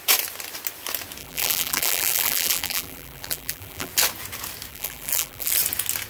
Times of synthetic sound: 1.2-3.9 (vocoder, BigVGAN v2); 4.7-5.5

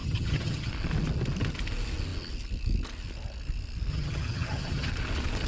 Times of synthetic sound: 0.0-0.7 (vocoder, HiFi-GAN); 3.9-4.9

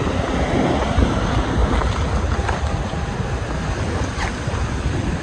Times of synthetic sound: none

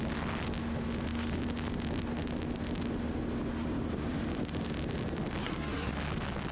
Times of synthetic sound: 5.4-5.9 (codec, SNAC)

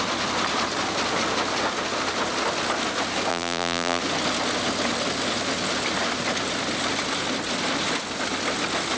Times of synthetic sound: 3.3-4.0 (vocoder, BigVGAN v2)